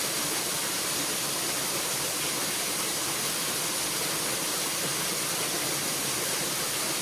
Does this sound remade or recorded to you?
recorded